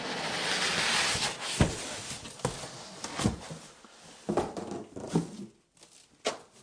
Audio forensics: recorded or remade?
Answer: recorded